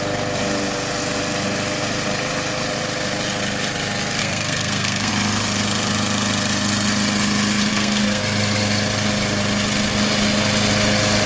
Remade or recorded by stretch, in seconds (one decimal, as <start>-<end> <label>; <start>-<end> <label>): 0.0-4.2 recorded; 4.2-5.1 remade; 5.1-7.7 recorded; 7.7-8.2 remade; 8.2-11.3 recorded